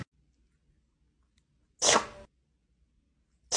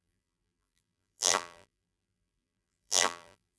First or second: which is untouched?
first